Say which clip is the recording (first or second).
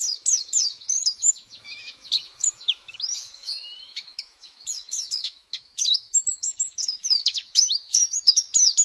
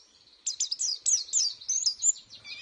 second